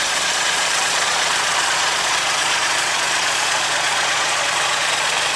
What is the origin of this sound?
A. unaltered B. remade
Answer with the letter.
B